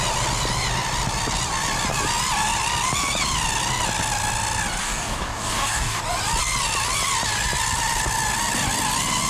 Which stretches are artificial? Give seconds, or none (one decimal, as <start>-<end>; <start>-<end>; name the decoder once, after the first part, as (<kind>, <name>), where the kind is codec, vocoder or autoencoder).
4.8-6.0 (codec, DAC)